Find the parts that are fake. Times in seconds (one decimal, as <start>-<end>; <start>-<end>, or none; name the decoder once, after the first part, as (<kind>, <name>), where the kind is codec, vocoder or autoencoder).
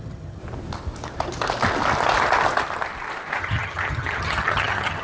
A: 0.0-0.4 (vocoder, HiFi-GAN); 3.4-5.0